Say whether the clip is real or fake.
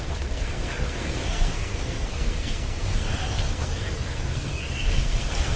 fake